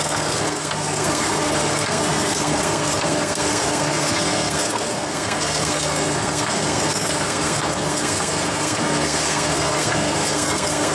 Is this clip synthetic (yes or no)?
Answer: yes